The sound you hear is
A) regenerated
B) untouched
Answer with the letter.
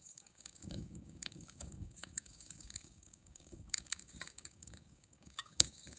A